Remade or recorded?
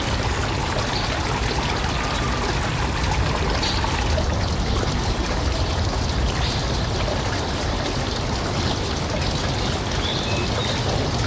recorded